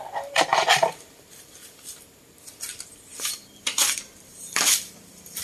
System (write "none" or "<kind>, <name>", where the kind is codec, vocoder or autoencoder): vocoder, BigVGAN v2